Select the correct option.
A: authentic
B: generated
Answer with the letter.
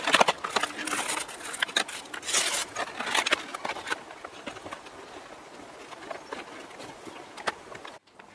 A